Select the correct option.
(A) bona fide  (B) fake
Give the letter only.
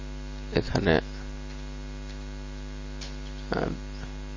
A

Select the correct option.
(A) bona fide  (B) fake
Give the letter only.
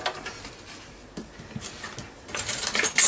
A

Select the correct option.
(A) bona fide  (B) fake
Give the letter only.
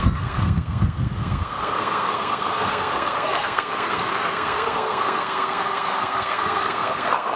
B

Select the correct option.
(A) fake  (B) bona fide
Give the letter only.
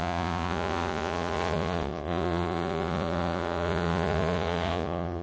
A